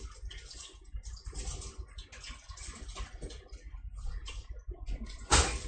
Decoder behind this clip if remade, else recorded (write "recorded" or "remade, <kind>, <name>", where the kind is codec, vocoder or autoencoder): recorded